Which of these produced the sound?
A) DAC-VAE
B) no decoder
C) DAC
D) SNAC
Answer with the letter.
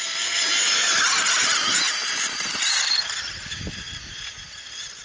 B